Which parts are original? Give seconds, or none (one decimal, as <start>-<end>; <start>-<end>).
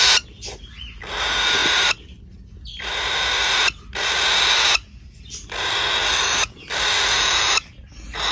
0.0-8.3